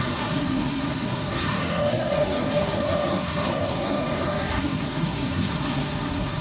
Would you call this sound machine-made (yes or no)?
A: yes